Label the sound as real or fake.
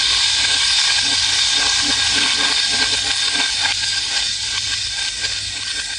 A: real